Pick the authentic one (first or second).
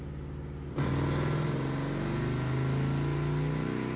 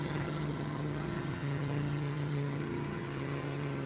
first